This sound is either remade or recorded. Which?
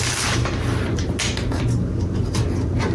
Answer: recorded